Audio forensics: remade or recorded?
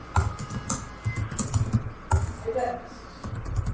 recorded